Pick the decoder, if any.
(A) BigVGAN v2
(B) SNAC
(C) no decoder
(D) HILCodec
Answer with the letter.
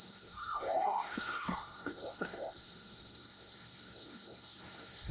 B